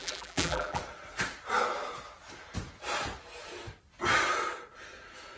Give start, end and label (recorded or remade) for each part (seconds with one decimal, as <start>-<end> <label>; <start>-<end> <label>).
0.0-0.8 remade; 0.8-5.4 recorded